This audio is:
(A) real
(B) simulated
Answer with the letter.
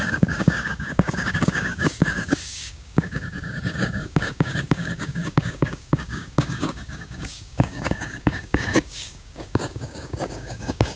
B